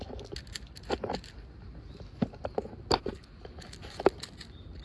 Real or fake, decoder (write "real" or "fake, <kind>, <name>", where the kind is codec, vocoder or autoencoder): real